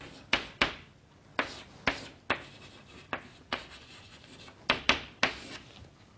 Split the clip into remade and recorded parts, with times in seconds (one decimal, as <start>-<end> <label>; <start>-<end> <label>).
0.0-3.3 recorded; 3.3-4.4 remade; 4.4-6.2 recorded